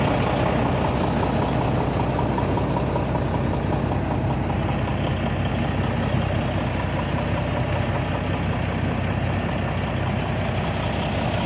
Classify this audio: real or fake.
real